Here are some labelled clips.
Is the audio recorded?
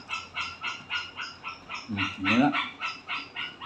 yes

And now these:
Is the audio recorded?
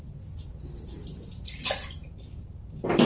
yes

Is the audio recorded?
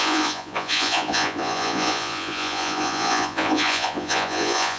no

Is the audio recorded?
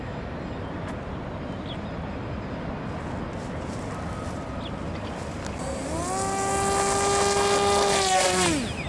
yes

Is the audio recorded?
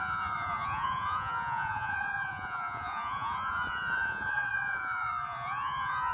no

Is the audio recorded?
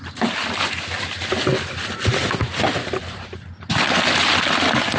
yes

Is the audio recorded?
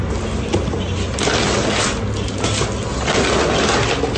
yes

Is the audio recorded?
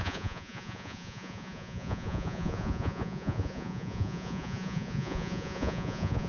no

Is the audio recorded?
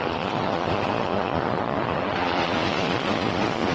no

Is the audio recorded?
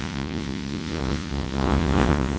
no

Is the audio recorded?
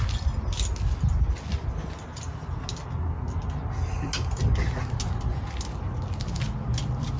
yes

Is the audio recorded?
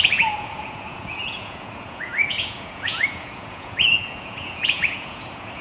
no